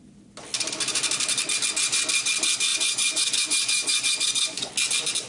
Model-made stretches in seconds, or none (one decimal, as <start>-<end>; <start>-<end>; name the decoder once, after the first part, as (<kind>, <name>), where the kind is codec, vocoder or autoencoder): 2.7-4.7 (vocoder, Vocos)